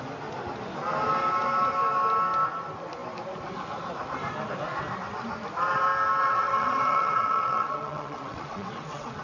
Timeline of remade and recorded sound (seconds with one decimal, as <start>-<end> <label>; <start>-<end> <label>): 0.0-6.2 recorded; 6.2-9.2 remade